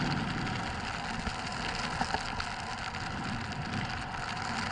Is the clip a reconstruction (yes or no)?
no